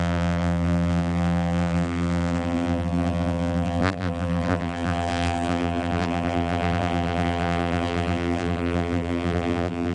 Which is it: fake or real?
fake